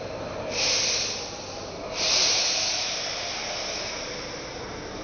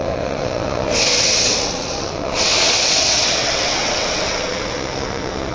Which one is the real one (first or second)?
first